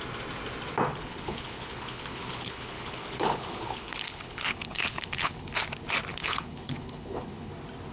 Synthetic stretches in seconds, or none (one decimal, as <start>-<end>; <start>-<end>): 0.9-5.6; 6.1-7.5